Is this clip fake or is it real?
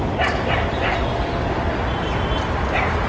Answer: real